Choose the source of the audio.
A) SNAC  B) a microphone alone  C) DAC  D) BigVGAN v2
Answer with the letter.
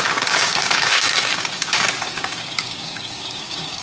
C